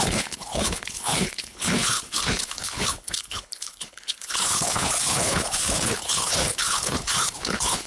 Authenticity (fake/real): fake